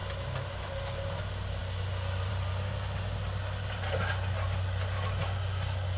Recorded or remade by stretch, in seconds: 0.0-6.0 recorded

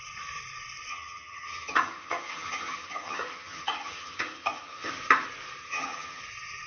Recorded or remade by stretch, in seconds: 0.0-0.9 recorded; 0.9-4.9 remade; 4.9-5.6 recorded; 5.6-6.2 remade; 6.2-6.7 recorded

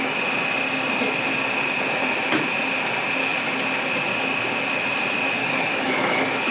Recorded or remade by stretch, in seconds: 0.0-5.4 recorded; 5.4-5.9 remade; 5.9-6.5 recorded